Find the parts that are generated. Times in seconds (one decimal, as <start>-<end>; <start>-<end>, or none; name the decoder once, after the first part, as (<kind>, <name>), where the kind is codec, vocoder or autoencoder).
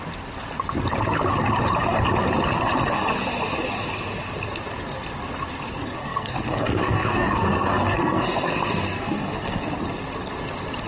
6.0-9.7 (codec, SNAC)